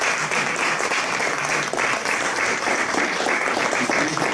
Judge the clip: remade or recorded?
remade